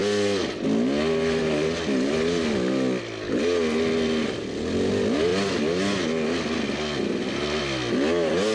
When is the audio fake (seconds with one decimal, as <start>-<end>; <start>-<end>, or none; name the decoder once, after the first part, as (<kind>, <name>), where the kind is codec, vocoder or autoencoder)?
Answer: none